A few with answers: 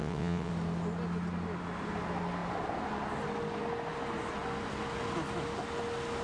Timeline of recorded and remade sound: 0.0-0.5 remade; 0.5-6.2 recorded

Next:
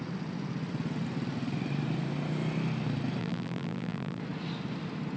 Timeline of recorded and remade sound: 0.0-3.2 recorded; 3.2-4.2 remade; 4.2-5.2 recorded

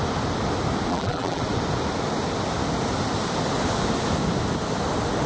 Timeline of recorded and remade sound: 0.0-0.9 recorded; 0.9-1.4 remade; 1.4-5.3 recorded

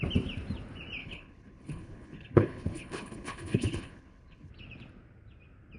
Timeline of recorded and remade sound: 0.0-1.0 recorded; 1.0-4.5 remade; 4.5-5.8 recorded